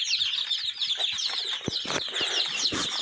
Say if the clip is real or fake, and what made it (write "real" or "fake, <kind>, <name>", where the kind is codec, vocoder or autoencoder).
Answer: real